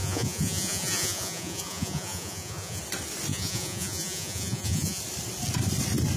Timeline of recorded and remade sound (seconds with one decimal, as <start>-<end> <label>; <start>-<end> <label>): 0.0-2.8 remade; 2.8-3.3 recorded; 3.3-5.0 remade; 5.0-6.2 recorded